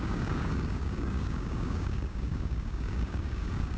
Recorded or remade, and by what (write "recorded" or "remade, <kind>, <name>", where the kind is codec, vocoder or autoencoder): remade, codec, DAC